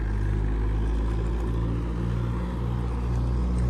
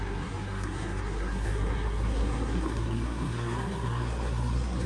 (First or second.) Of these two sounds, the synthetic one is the second